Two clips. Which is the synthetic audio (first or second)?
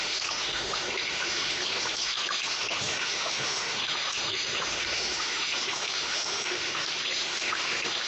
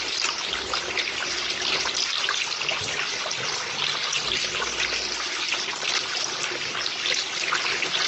first